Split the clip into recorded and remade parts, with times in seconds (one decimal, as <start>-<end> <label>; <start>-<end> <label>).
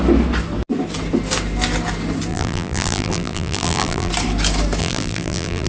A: 0.0-2.3 recorded; 2.3-4.1 remade; 4.1-4.8 recorded; 4.8-5.7 remade